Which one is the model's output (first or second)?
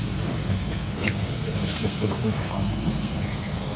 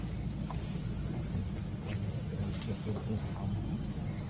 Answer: first